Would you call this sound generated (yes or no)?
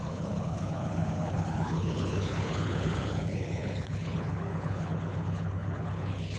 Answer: yes